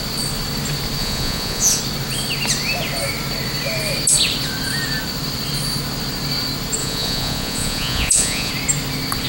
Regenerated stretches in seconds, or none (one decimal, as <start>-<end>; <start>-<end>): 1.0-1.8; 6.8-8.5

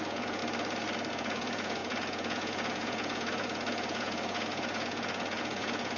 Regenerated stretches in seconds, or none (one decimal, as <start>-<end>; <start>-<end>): 0.0-0.4; 1.1-6.0

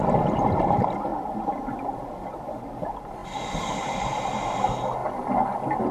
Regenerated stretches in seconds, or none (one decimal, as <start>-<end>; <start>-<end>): none

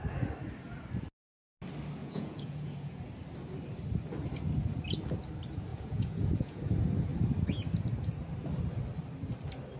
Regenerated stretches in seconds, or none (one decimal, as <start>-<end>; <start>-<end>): 2.0-3.0; 5.7-6.6

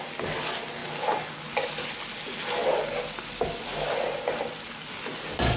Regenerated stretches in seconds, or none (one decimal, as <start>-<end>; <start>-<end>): none

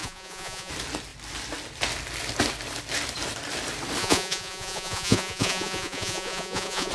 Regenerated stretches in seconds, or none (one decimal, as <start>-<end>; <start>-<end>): 0.0-0.7; 4.0-6.9